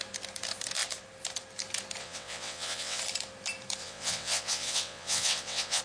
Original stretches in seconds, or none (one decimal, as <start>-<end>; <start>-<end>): 0.0-2.0; 3.0-3.8